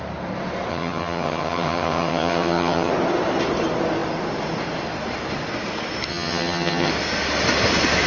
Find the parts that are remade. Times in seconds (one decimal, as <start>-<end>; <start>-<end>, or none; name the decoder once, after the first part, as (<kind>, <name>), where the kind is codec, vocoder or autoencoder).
0.7-2.9 (vocoder, HiFi-GAN); 6.1-6.9